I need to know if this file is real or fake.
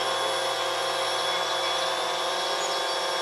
real